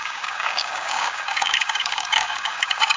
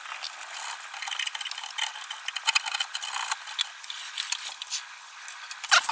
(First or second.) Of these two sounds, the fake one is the first